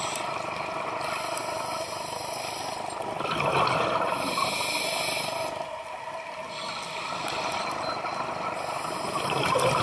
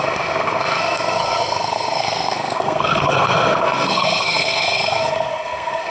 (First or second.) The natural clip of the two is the first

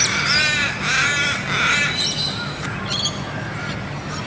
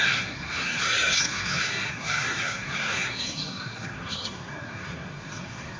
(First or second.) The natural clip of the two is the first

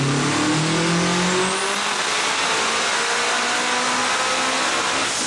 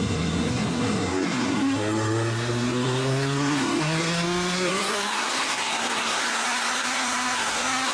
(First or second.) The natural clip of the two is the first